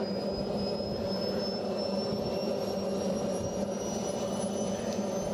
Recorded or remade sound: recorded